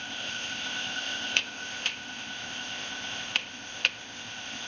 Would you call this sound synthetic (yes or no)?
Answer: yes